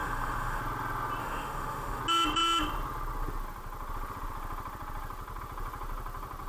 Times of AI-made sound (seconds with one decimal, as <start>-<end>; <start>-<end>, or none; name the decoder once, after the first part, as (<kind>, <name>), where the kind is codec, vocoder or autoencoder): 0.0-0.6 (autoencoder, DAC-VAE); 1.2-2.0